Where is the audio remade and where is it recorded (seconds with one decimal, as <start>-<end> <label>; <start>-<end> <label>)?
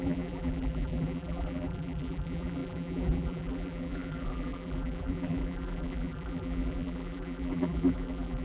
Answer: 0.0-8.4 remade